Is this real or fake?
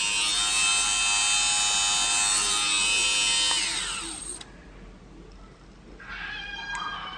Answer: real